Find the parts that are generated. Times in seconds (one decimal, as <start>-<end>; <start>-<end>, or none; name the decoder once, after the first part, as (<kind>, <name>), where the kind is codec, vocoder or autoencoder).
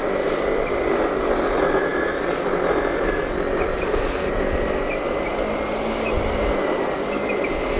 none